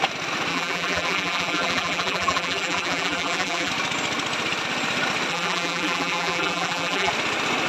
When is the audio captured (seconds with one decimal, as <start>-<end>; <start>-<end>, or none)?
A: 0.0-0.5; 3.7-5.3; 7.1-7.7